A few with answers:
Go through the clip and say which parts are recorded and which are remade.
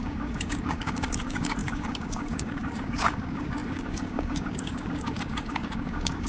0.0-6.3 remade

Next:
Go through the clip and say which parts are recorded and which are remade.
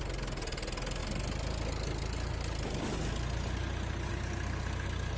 0.0-5.2 recorded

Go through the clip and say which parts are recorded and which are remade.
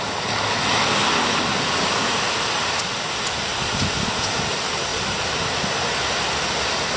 0.0-7.0 recorded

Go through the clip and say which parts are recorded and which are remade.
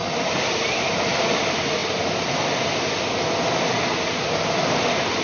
0.0-5.2 recorded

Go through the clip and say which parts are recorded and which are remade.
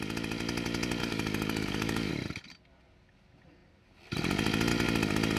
0.0-1.0 recorded; 1.0-2.1 remade; 2.1-5.4 recorded